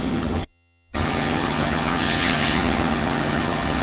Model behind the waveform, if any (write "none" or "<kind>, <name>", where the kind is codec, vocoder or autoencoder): vocoder, HiFi-GAN